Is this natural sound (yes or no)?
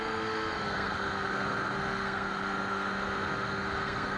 no